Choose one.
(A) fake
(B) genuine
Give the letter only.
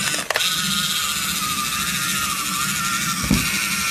B